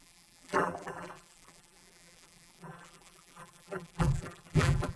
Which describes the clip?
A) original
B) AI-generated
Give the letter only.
B